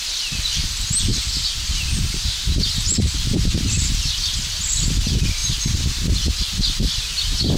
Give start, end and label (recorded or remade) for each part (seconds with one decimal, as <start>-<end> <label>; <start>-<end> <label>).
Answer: 0.0-1.1 recorded; 1.1-4.1 remade; 4.1-7.6 recorded